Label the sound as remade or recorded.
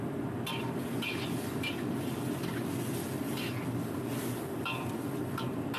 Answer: recorded